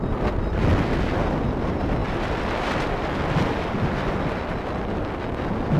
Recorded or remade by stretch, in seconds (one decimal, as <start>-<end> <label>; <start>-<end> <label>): 0.0-1.6 recorded; 1.6-2.0 remade; 2.0-5.8 recorded